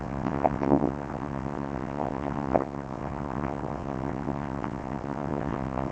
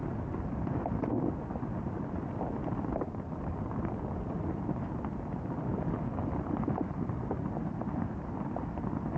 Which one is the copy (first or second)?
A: first